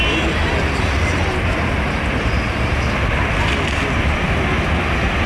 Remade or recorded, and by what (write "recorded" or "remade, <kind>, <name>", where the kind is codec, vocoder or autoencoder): recorded